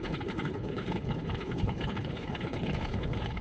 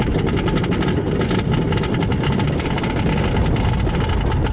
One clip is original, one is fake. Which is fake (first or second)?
first